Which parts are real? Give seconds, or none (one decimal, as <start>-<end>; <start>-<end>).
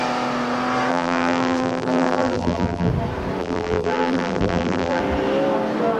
0.0-0.9; 2.9-3.4; 5.0-6.0